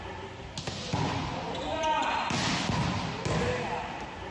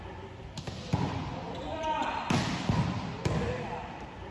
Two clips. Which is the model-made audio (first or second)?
second